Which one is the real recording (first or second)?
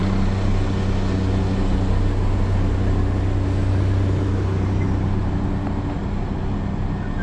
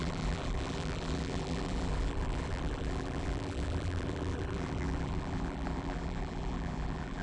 first